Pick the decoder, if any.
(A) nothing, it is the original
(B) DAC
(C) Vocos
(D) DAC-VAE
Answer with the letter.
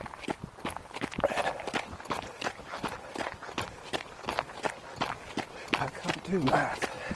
A